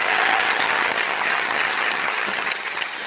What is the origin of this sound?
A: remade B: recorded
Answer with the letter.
A